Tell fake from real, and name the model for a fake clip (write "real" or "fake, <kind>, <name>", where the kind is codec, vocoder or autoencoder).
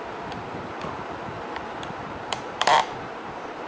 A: fake, vocoder, BigVGAN v2